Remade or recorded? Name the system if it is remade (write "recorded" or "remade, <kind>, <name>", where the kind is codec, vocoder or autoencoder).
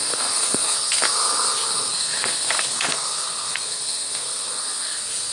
remade, codec, SNAC